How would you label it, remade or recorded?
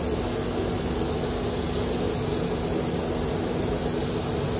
recorded